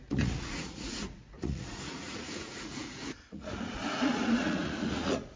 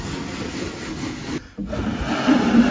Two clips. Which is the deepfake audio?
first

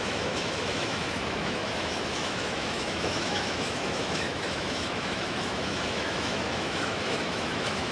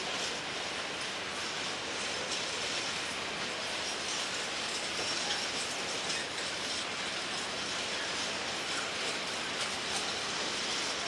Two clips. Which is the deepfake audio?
first